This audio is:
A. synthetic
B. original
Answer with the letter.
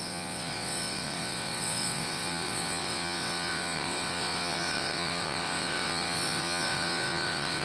A